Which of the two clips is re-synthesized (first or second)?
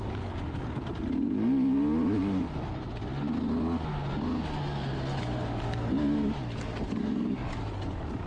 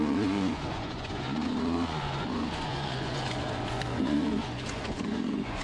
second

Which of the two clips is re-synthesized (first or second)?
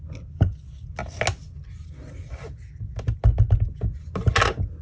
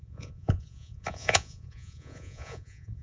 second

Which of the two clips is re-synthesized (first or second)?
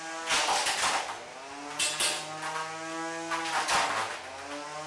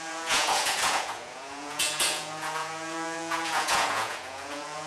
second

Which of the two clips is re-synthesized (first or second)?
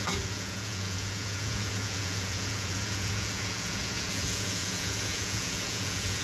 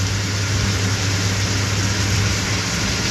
first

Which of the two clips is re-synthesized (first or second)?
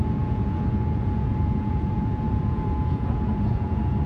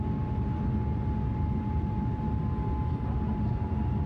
first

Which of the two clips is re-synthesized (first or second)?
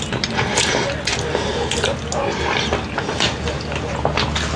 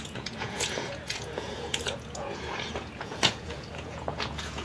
second